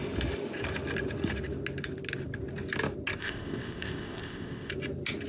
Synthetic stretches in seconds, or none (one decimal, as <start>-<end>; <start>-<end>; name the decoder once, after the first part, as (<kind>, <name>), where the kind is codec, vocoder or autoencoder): 3.2-4.7 (codec, ZipCodec)